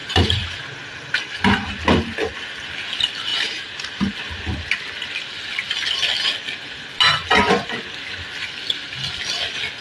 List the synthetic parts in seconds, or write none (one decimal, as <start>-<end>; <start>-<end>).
0.0-0.6; 3.3-4.0